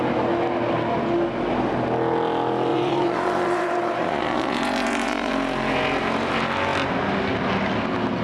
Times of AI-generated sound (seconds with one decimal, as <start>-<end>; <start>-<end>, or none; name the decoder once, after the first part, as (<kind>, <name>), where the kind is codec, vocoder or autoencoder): 2.7-5.3 (vocoder, Vocos)